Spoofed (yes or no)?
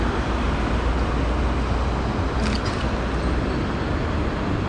no